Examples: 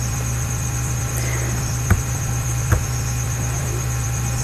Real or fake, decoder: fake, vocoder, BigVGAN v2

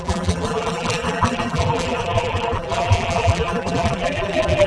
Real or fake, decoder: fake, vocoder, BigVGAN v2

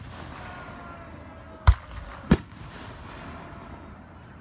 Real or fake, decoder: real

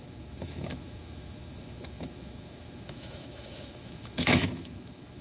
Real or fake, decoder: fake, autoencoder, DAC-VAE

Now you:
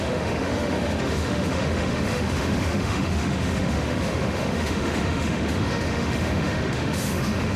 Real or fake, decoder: fake, autoencoder, DAC-VAE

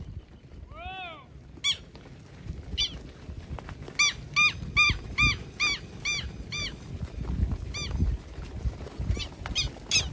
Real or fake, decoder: real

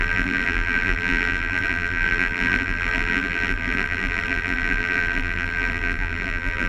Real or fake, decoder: fake, vocoder, BigVGAN v2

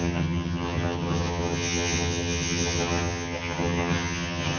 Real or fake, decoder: fake, vocoder, HiFi-GAN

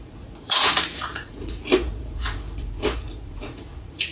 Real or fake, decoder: fake, vocoder, Vocos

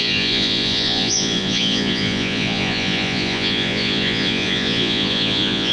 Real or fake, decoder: fake, vocoder, Vocos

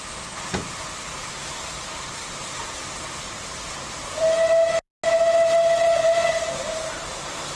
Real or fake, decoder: real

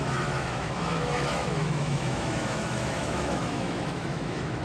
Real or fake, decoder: fake, autoencoder, DAC-VAE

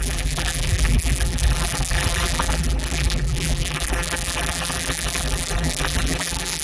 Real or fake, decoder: fake, vocoder, BigVGAN v2